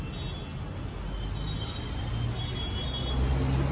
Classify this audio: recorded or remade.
recorded